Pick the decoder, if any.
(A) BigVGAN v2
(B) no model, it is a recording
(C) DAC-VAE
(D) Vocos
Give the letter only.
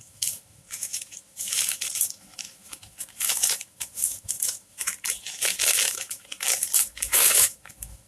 C